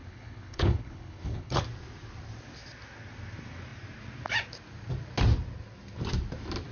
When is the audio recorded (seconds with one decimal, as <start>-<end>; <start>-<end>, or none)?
1.6-6.7